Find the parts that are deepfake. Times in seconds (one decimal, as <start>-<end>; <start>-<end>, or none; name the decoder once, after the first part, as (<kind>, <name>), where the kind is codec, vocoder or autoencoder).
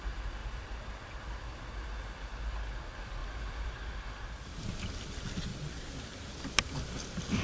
none